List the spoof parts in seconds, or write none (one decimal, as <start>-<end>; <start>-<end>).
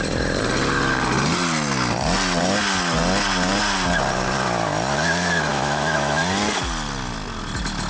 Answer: 5.5-6.2